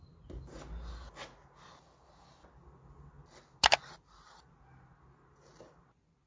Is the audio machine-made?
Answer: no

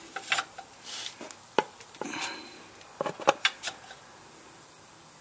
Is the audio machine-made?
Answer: no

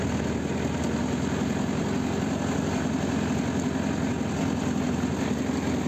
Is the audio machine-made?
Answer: no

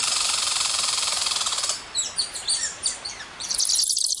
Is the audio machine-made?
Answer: yes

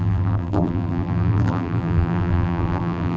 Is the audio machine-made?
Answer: yes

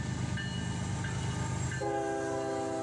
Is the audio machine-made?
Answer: no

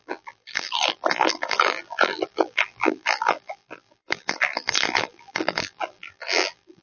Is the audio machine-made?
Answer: yes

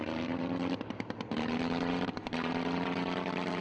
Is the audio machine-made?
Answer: yes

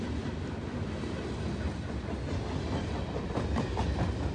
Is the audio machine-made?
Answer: no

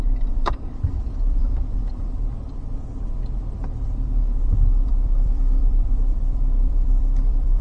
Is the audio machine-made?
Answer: yes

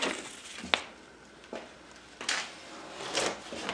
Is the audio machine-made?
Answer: no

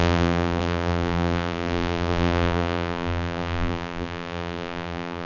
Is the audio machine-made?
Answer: yes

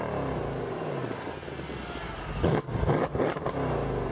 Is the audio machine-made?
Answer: no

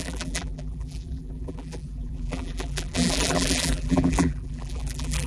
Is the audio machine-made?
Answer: yes